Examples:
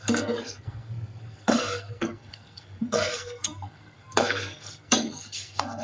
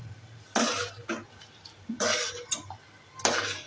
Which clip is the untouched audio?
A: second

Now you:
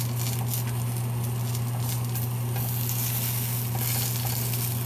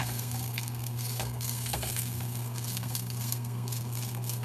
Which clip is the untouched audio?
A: first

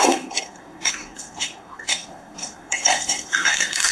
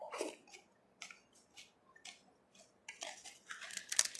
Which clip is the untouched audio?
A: second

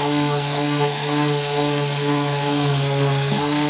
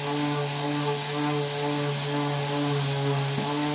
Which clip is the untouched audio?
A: second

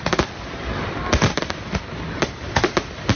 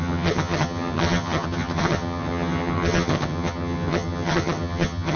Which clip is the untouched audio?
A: first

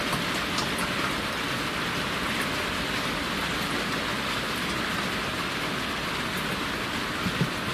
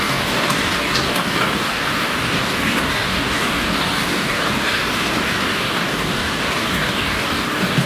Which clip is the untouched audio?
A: first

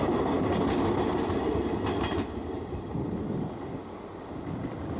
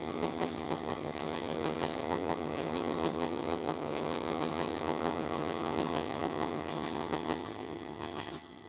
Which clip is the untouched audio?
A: first